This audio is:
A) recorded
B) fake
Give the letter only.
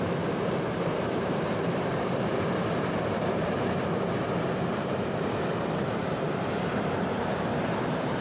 B